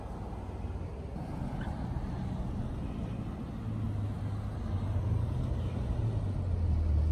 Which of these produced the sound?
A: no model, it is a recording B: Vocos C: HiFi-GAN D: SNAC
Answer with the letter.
A